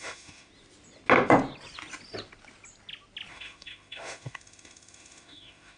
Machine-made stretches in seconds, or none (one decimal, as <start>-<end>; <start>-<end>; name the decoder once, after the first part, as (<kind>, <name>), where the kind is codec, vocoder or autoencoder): 0.0-0.5 (autoencoder, DAC-VAE); 3.3-5.8